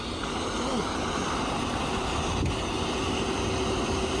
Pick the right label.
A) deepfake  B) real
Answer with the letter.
B